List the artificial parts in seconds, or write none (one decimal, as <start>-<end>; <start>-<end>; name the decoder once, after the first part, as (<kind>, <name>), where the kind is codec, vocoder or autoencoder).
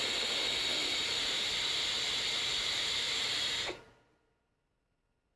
0.8-3.8 (vocoder, BigVGAN v2)